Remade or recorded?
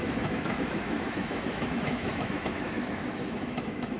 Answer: remade